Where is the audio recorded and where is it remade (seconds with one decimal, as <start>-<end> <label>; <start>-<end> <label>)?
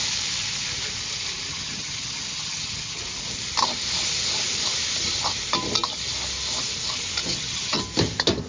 0.0-1.5 recorded; 1.5-3.0 remade; 3.0-7.2 recorded; 7.2-7.8 remade; 7.8-8.5 recorded